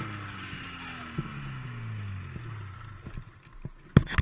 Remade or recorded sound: recorded